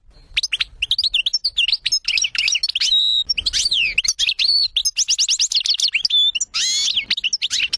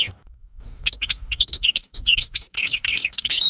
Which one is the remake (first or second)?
second